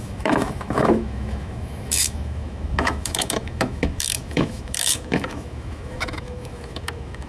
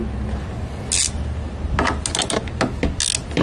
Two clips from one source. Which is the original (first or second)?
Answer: second